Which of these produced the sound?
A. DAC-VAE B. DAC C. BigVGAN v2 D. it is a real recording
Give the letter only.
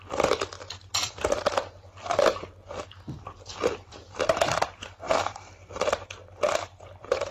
C